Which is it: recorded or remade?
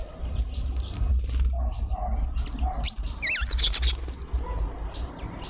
recorded